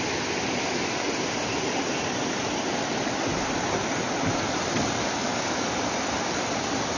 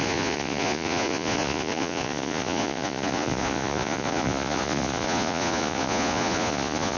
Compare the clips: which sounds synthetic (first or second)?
second